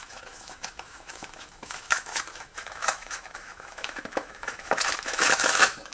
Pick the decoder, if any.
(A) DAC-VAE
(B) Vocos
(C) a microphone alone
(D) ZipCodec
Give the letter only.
A